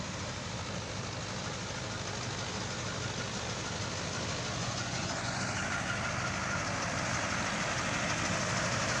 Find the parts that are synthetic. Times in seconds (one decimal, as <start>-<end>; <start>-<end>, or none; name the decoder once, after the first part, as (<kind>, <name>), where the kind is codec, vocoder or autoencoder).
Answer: 4.6-5.4 (vocoder, Vocos)